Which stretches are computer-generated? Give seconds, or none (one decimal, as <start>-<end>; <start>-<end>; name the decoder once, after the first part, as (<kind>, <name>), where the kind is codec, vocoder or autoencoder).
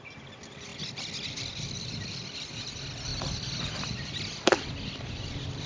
none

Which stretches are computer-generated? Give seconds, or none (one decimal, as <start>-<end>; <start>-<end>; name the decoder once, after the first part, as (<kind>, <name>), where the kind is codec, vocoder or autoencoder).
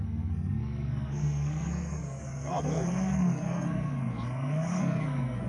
0.0-5.5 (codec, SNAC)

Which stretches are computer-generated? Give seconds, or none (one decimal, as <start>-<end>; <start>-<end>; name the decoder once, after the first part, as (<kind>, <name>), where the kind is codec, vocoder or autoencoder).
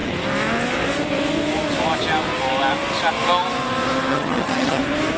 4.1-4.8 (vocoder, HiFi-GAN)